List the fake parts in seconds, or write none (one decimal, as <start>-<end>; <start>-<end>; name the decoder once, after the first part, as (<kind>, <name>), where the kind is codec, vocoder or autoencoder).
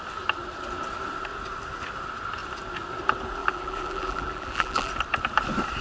3.4-4.9 (vocoder, BigVGAN v2)